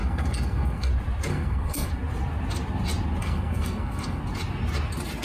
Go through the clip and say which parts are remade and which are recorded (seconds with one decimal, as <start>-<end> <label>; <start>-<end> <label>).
0.0-0.9 remade; 0.9-1.3 recorded; 1.3-1.9 remade; 1.9-3.2 recorded; 3.2-4.2 remade; 4.2-5.2 recorded